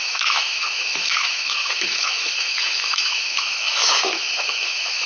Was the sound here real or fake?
fake